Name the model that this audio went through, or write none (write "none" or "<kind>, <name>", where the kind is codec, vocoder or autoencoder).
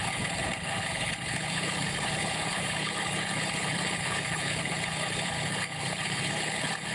codec, HILCodec